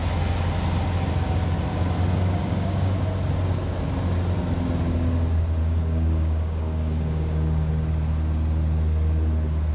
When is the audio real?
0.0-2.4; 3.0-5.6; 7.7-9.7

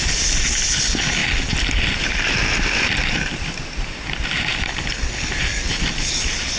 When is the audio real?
0.0-6.6